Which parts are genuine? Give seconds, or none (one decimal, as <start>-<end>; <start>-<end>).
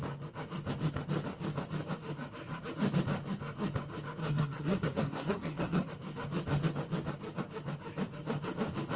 0.0-4.2; 5.9-9.0